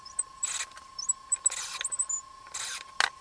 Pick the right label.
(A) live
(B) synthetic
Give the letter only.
A